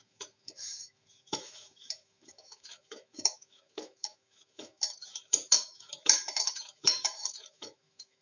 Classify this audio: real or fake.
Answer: fake